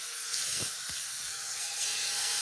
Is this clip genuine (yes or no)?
no